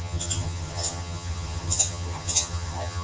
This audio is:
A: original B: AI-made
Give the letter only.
B